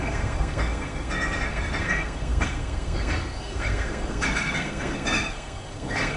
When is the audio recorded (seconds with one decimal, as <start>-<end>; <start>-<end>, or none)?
none